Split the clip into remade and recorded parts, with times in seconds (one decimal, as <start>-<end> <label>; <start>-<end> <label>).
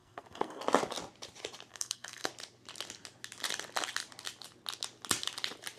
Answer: 0.0-0.6 remade; 0.6-1.7 recorded; 1.7-2.3 remade; 2.3-5.8 recorded